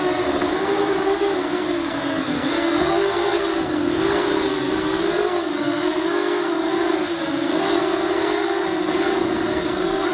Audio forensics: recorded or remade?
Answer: remade